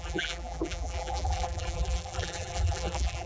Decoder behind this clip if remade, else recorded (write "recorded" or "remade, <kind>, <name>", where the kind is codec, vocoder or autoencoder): remade, vocoder, BigVGAN v2